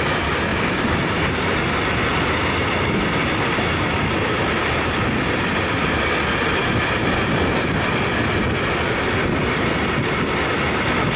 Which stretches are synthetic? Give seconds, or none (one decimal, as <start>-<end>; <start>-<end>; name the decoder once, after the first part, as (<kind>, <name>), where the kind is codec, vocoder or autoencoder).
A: none